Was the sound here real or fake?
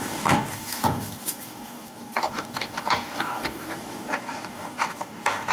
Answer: fake